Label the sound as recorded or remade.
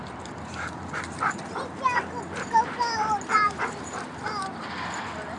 remade